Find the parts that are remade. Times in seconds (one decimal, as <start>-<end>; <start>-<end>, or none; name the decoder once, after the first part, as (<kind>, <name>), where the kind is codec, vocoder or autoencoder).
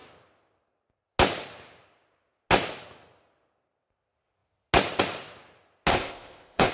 5.9-6.7 (codec, ZipCodec)